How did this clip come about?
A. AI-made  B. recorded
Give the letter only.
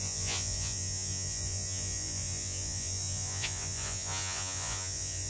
A